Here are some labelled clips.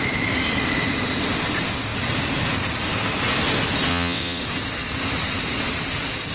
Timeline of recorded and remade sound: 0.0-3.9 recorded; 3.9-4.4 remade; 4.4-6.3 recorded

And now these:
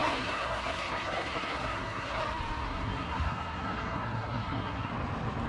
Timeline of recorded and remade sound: 0.0-2.2 remade; 2.2-2.6 recorded; 2.6-4.9 remade; 4.9-5.5 recorded

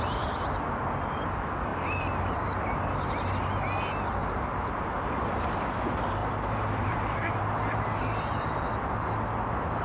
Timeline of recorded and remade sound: 0.0-4.2 recorded; 4.2-5.1 remade; 5.1-6.2 recorded; 6.2-9.1 remade; 9.1-9.8 recorded

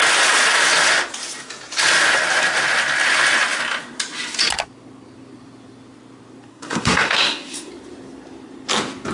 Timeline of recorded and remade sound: 0.0-6.5 recorded; 6.5-7.7 remade; 7.7-9.1 recorded

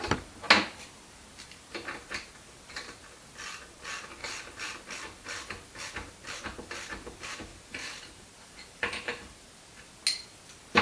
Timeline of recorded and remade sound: 0.0-7.5 recorded; 7.5-9.9 remade; 9.9-10.8 recorded

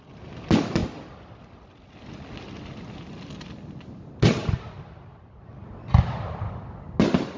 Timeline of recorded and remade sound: 0.0-7.4 recorded

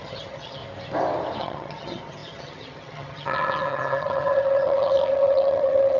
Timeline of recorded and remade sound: 0.0-0.6 remade; 0.6-1.4 recorded; 1.4-6.0 remade

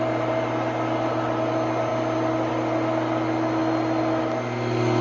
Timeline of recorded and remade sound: 0.0-5.0 recorded